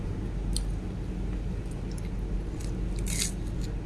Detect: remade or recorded recorded